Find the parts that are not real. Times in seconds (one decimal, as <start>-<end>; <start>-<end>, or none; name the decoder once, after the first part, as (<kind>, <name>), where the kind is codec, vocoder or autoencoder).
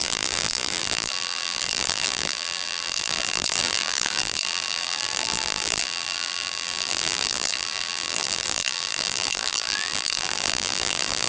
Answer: 0.0-11.3 (vocoder, BigVGAN v2)